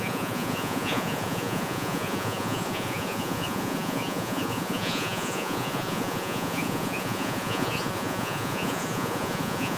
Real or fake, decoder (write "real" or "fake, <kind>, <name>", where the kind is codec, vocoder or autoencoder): fake, vocoder, Vocos